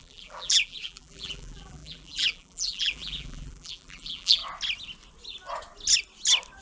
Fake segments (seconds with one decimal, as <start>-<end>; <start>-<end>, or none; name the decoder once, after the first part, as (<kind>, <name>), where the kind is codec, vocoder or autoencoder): 0.0-4.4 (vocoder, BigVGAN v2)